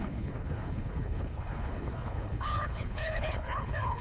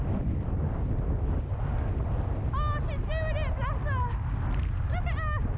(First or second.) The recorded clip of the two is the second